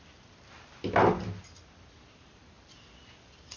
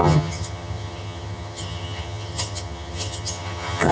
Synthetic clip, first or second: second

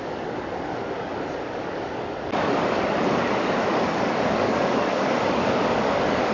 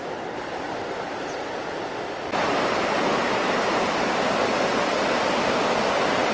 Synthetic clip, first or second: first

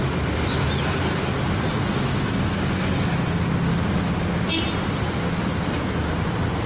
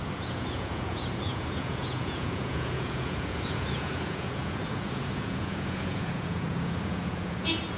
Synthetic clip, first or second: second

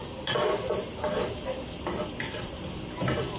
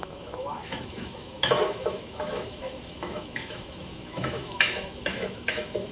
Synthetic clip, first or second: second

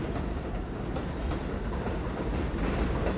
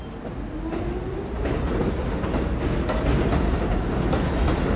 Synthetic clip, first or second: first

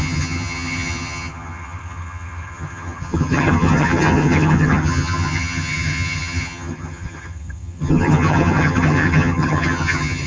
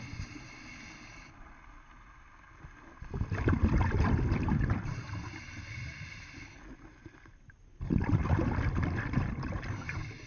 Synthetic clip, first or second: first